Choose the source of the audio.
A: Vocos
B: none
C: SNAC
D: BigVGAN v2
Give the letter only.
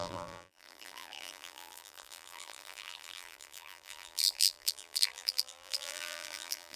D